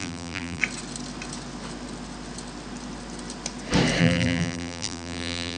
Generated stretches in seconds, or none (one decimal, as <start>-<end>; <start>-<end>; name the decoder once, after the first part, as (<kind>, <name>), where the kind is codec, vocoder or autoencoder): 0.0-0.6 (vocoder, BigVGAN v2); 4.0-5.6